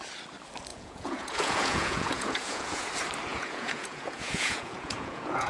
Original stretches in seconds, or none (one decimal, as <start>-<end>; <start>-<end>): 0.0-0.7; 2.9-3.3